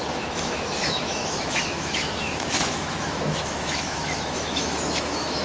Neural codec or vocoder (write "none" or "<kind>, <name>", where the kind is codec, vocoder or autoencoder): autoencoder, DAC-VAE